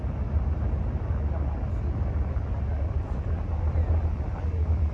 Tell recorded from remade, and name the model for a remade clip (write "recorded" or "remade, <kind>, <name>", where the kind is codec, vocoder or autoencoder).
recorded